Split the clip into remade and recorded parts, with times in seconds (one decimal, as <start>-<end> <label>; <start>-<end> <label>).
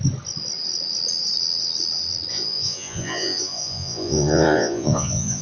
0.0-2.3 recorded; 2.3-5.4 remade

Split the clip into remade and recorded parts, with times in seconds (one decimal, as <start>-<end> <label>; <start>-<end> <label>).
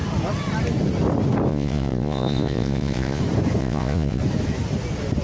0.0-1.5 recorded; 1.5-3.2 remade; 3.2-3.6 recorded; 3.6-4.2 remade; 4.2-5.2 recorded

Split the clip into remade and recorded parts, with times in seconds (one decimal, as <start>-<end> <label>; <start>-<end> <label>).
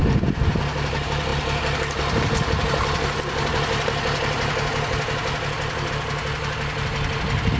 0.0-7.6 recorded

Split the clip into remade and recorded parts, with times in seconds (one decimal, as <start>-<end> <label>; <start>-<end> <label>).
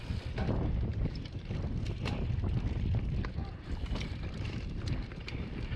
0.0-0.9 recorded; 0.9-1.5 remade; 1.5-3.4 recorded; 3.4-4.2 remade; 4.2-5.8 recorded